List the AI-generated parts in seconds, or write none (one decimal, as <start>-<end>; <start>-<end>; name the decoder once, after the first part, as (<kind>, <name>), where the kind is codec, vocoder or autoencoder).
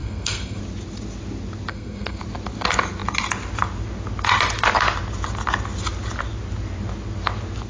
0.0-0.6 (codec, SNAC); 1.7-2.2